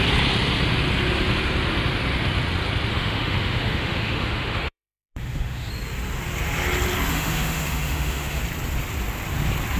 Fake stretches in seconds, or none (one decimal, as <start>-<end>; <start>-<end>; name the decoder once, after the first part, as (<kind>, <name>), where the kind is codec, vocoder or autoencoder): 2.9-5.7 (autoencoder, DAC-VAE); 7.1-8.4